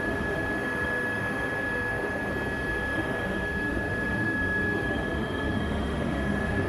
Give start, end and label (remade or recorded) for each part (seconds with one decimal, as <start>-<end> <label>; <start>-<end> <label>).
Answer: 0.0-2.2 remade; 2.2-2.7 recorded; 2.7-6.7 remade